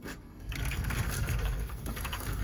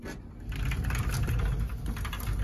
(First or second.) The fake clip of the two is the first